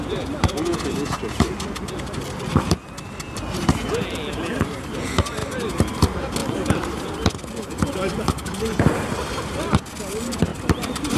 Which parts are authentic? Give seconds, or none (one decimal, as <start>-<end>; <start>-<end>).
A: 0.0-5.4; 6.0-10.5